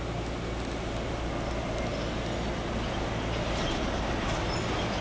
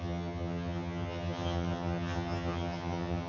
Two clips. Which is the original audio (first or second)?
first